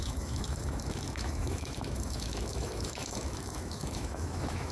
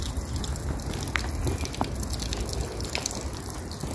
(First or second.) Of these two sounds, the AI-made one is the first